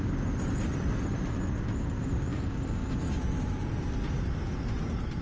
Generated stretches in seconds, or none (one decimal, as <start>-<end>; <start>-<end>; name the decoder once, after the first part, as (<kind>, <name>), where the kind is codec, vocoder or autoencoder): none